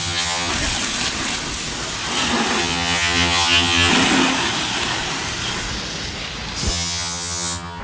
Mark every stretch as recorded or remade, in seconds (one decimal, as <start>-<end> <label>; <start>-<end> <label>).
0.0-0.5 remade; 0.5-2.6 recorded; 2.6-3.9 remade; 3.9-6.7 recorded; 6.7-7.8 remade